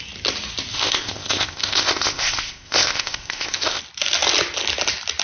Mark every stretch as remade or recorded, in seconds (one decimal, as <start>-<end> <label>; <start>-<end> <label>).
0.0-0.7 recorded; 0.7-3.8 remade; 3.8-5.2 recorded